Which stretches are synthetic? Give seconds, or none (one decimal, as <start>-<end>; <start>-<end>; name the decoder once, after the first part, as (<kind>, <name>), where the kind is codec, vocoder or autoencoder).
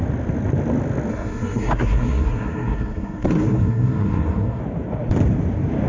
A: 1.1-4.6 (codec, SNAC)